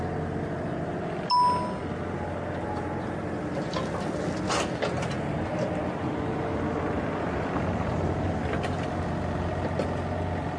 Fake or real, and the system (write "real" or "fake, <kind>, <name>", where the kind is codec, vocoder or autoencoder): real